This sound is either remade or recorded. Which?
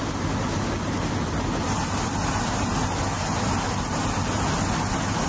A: recorded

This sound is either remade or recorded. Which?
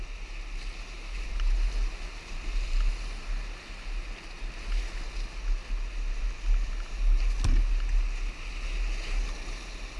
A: recorded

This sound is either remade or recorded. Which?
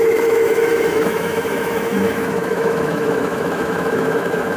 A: remade